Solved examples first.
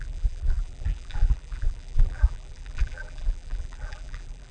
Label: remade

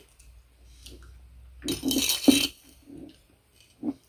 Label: recorded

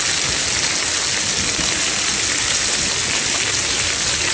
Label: recorded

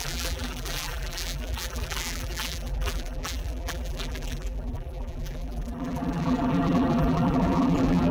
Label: remade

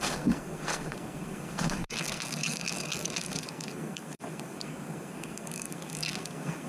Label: remade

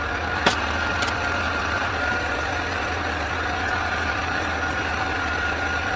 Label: remade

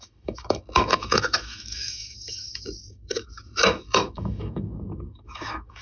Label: remade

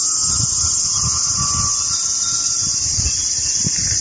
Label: recorded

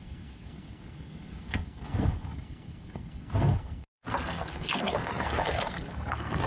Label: remade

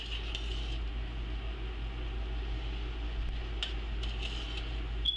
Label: recorded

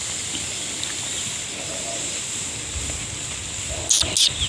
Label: recorded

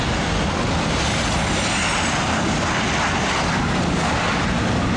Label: recorded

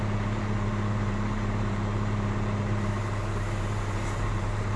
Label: remade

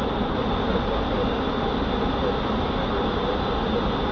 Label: recorded